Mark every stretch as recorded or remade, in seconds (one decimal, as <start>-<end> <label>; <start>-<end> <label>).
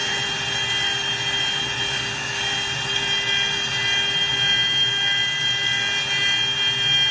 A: 0.0-7.1 recorded